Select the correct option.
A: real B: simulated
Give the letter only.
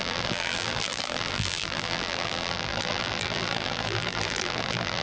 B